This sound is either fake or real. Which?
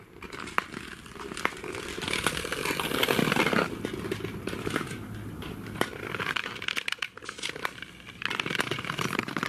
real